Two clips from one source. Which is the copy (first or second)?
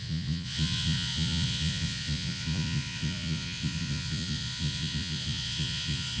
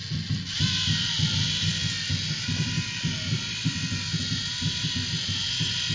first